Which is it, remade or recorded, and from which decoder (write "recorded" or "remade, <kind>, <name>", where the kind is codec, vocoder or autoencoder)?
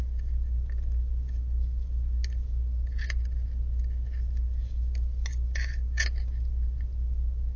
recorded